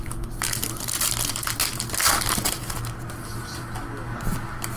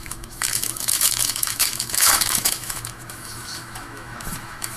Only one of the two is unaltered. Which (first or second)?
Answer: first